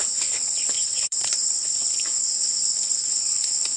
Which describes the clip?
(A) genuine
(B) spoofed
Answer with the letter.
B